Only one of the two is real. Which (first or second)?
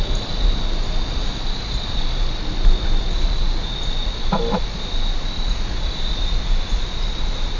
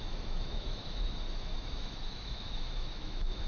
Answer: first